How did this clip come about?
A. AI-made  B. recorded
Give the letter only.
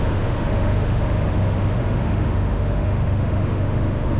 A